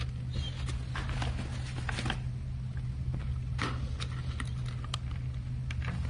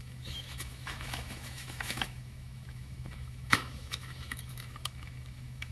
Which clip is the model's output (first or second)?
second